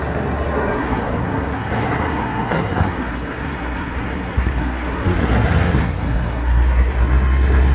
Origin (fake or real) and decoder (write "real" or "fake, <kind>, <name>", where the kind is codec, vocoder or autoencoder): fake, codec, SNAC